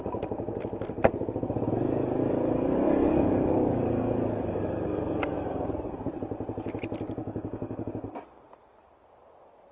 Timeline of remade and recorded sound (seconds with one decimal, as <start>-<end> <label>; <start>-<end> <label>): 0.0-2.2 recorded; 2.2-5.9 remade; 5.9-7.2 recorded; 7.2-7.9 remade; 7.9-9.7 recorded